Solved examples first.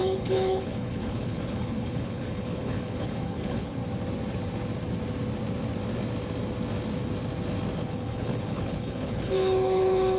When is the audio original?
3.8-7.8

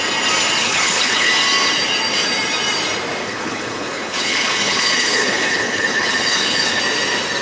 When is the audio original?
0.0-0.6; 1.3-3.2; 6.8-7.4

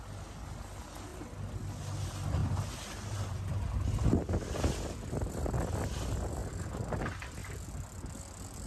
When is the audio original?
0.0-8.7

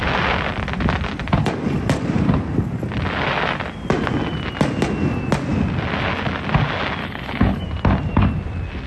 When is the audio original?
0.0-7.0; 7.6-8.9

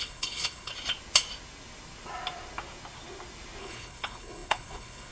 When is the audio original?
0.7-3.6

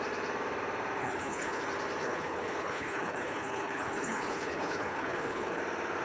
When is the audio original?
0.0-1.0; 1.6-2.0; 5.6-6.0